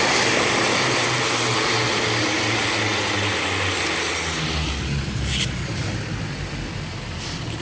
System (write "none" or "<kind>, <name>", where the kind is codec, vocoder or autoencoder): none